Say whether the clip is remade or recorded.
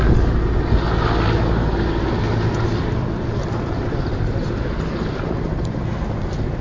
recorded